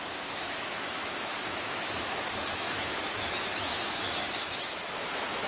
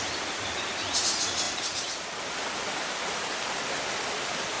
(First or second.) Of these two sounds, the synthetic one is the first